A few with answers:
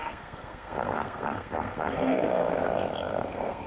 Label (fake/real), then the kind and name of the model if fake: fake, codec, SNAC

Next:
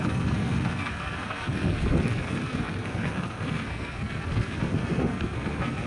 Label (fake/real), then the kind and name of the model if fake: fake, codec, SNAC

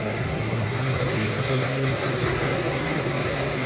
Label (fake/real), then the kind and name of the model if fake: fake, codec, SNAC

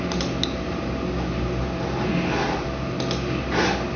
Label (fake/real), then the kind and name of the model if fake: real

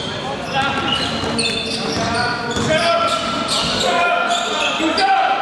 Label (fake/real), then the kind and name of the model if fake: real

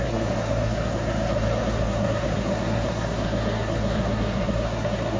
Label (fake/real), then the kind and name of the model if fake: fake, codec, SNAC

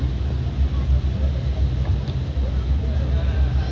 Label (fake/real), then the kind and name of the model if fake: real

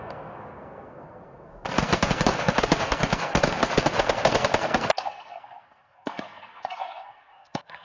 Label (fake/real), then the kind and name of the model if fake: fake, codec, SNAC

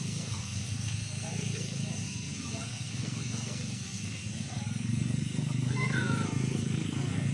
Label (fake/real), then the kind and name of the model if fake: fake, codec, SNAC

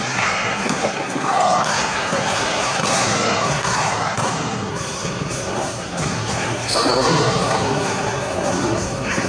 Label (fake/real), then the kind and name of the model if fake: fake, codec, SNAC